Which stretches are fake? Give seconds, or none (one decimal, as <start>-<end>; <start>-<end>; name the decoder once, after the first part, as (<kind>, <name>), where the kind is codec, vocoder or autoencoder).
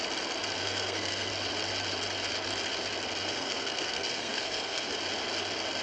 0.6-1.3 (codec, SNAC); 3.2-4.9